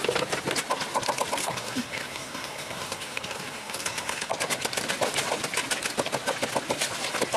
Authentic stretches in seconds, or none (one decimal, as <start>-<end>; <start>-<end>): 0.0-1.4; 4.3-7.4